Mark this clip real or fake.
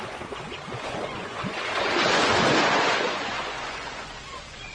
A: fake